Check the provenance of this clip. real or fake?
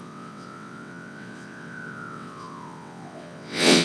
fake